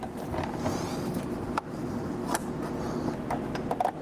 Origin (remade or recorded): recorded